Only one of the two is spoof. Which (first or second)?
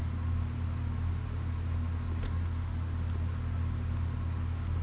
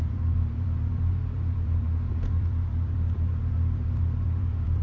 second